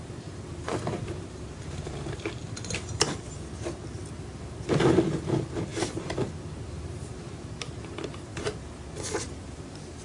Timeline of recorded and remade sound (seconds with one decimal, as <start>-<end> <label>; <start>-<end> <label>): 0.0-2.4 remade; 2.4-4.3 recorded; 4.3-8.3 remade; 8.3-9.4 recorded; 9.4-10.0 remade